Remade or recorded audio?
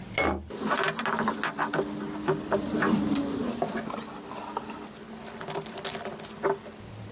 recorded